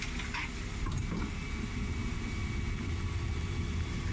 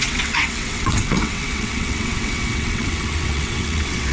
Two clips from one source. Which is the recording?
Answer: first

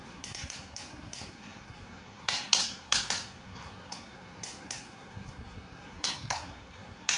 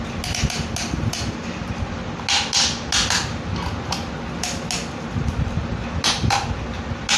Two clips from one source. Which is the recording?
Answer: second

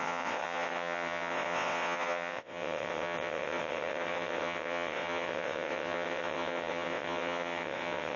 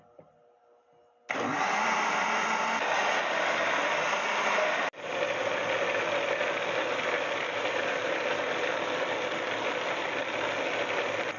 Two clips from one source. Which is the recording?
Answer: second